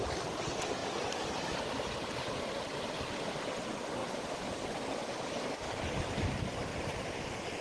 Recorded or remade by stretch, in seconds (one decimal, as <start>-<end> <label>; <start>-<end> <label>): 0.0-4.0 recorded; 4.0-4.7 remade; 4.7-7.6 recorded